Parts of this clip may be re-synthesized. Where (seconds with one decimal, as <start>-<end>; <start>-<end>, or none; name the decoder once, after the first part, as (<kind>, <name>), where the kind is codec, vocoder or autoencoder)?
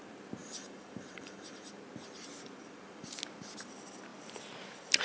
0.4-1.8 (vocoder, BigVGAN v2); 2.6-3.1